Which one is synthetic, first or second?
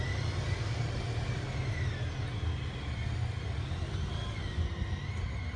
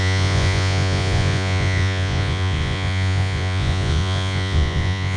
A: second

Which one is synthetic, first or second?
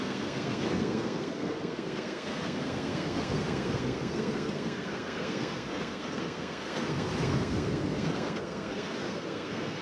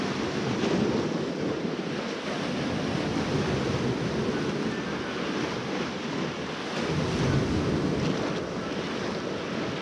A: first